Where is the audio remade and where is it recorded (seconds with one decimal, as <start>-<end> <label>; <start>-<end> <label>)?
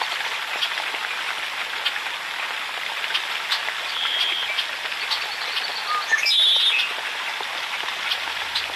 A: 0.0-8.8 recorded